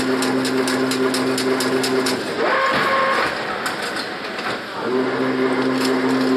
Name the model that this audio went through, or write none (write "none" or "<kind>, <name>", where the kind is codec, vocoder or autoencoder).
none